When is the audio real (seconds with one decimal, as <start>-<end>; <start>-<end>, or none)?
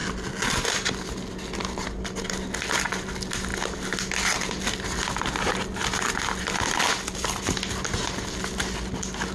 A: 0.0-9.3